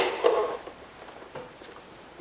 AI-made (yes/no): yes